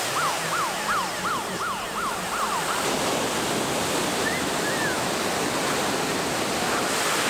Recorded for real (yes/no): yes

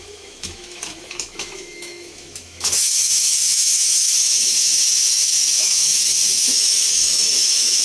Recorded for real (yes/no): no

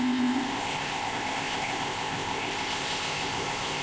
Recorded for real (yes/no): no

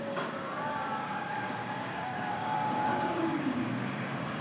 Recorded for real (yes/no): no